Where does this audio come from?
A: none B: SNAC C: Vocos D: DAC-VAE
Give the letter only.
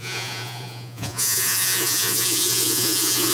C